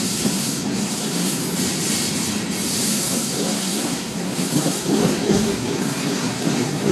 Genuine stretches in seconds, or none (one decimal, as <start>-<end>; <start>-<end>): 1.4-2.9